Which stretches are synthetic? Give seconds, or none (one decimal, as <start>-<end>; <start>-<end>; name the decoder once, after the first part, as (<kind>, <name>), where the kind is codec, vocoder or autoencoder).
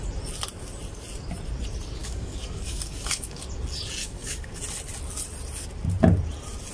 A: 2.0-3.4 (codec, DAC); 4.0-4.6